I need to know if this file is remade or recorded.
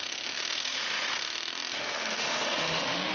remade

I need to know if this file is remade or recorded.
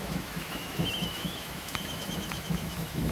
remade